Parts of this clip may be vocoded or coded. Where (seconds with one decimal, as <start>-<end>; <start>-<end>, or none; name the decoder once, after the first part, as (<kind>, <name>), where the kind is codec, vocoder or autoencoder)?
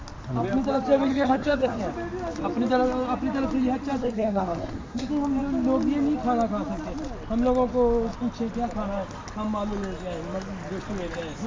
1.1-1.8 (codec, SNAC); 4.0-5.1